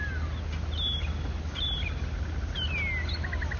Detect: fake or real real